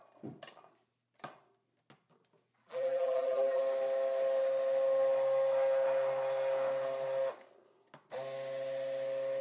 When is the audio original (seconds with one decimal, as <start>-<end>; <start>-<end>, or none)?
0.0-2.6; 3.6-9.4